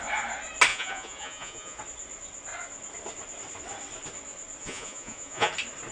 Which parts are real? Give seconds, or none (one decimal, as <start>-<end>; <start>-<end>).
0.0-0.7; 1.8-4.6; 5.5-5.9